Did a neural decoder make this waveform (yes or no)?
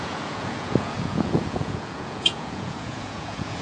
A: yes